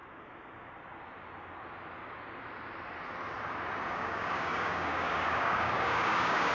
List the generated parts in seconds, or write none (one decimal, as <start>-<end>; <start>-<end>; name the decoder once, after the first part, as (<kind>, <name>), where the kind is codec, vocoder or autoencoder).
3.9-6.5 (codec, DAC)